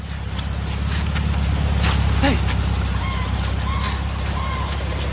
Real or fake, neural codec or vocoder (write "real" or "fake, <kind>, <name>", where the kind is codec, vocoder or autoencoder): real